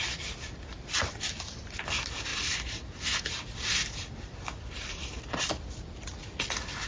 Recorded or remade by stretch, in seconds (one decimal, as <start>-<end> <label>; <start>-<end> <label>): 0.0-2.3 recorded; 2.3-2.9 remade; 2.9-6.9 recorded